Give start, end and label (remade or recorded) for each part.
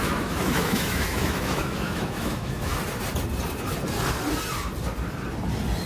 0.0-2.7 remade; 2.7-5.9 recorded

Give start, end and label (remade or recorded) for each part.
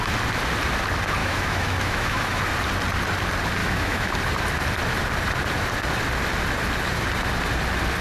0.0-1.2 recorded; 1.2-2.4 remade; 2.4-3.6 recorded; 3.6-4.1 remade; 4.1-8.0 recorded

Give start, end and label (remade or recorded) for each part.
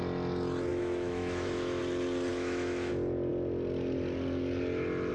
0.0-0.7 recorded; 0.7-1.8 remade; 1.8-2.3 recorded; 2.3-2.9 remade; 2.9-5.1 recorded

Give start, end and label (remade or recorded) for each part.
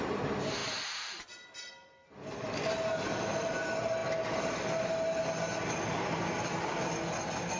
0.0-7.6 recorded